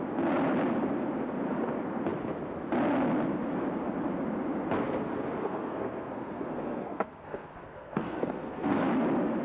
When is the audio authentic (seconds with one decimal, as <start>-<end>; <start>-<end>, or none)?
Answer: 0.0-5.4; 8.9-9.4